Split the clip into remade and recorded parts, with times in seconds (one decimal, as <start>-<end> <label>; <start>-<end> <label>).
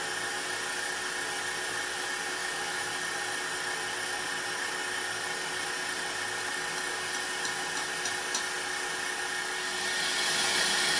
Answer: 0.0-2.4 recorded; 2.4-2.9 remade; 2.9-11.0 recorded